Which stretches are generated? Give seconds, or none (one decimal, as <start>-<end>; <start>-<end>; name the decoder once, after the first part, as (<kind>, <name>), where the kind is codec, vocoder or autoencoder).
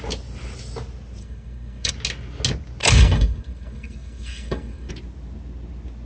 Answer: 1.2-1.9 (codec, SNAC); 2.8-4.9